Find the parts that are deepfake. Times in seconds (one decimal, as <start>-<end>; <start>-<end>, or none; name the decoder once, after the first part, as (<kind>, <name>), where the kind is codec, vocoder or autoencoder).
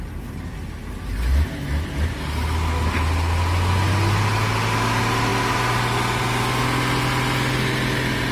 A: none